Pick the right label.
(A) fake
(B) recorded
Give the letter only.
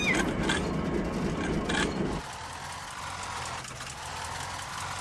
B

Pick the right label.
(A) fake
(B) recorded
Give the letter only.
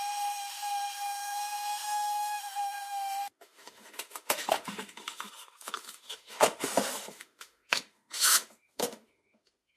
A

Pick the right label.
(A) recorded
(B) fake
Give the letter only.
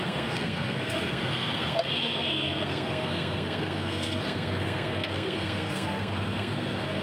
B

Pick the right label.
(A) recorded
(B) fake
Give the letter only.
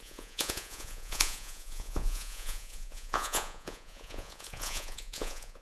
B